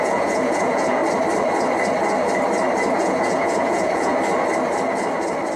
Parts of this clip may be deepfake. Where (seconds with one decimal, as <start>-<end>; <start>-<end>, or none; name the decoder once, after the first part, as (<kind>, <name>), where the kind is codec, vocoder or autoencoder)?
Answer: 0.0-1.0 (vocoder, Vocos); 3.0-4.1